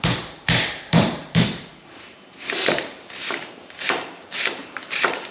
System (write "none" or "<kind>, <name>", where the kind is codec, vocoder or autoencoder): vocoder, BigVGAN v2